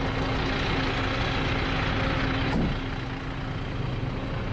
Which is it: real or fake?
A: real